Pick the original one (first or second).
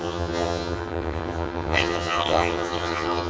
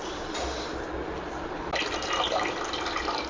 second